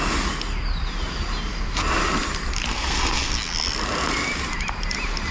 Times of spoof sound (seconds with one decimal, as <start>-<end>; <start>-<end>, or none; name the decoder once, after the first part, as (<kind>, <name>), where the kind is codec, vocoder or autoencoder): 2.7-3.3 (codec, SNAC)